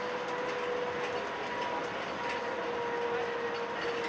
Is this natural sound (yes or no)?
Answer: yes